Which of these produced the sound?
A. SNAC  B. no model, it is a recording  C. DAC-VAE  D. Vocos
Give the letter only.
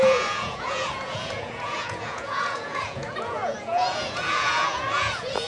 D